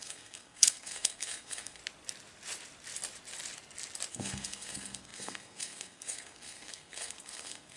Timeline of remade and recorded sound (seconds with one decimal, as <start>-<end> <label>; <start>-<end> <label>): 0.0-1.8 remade; 1.8-4.1 recorded; 4.1-7.8 remade